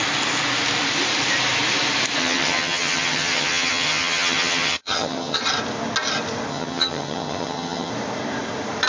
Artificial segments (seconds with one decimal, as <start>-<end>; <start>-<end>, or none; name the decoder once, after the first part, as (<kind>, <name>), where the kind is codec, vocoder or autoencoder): 2.2-5.4 (vocoder, HiFi-GAN); 6.5-7.9